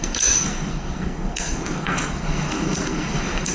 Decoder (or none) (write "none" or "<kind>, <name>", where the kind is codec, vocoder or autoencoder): codec, SNAC